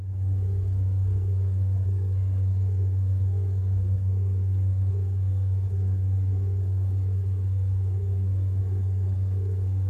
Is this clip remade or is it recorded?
remade